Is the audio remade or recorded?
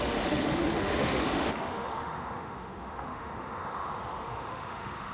remade